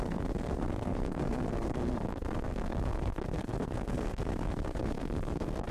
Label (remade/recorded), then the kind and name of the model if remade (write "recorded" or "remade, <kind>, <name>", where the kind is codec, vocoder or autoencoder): remade, codec, SNAC